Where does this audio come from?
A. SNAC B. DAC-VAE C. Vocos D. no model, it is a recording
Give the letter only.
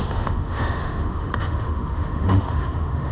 B